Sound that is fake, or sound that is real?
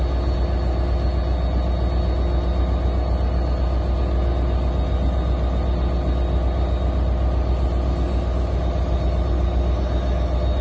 real